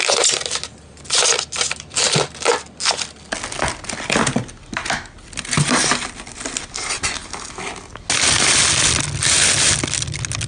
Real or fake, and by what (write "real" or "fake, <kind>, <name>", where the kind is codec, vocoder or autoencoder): real